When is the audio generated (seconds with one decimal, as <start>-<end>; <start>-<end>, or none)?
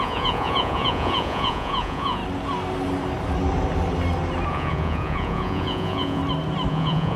0.0-2.2; 4.5-6.2; 6.7-7.2